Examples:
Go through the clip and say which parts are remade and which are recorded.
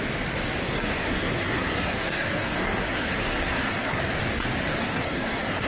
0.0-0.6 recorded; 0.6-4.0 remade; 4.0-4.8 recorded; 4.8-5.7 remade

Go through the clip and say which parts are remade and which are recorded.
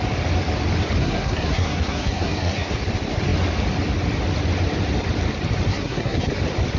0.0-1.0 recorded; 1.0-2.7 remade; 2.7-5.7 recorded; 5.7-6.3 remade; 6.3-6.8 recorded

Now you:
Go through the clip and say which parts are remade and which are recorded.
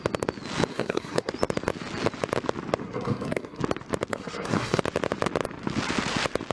0.0-0.7 recorded; 0.7-1.3 remade; 1.3-2.8 recorded; 2.8-3.6 remade; 3.6-4.1 recorded; 4.1-4.8 remade; 4.8-6.5 recorded